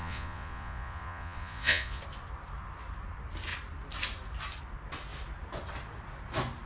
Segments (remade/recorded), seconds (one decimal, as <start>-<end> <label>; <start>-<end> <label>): 0.0-2.0 remade; 2.0-6.7 recorded